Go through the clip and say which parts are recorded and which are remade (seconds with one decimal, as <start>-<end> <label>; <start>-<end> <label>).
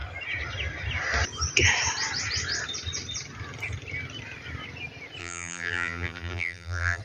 0.0-5.2 recorded; 5.2-7.0 remade